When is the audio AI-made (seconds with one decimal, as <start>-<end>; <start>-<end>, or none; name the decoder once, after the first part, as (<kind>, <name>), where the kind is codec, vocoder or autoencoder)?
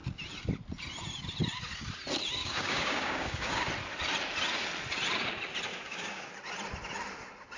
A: 2.4-3.7 (codec, DAC); 5.7-6.3